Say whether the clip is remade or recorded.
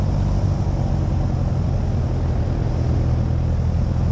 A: recorded